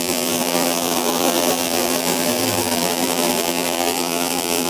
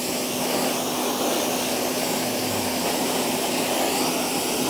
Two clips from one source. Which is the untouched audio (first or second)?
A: second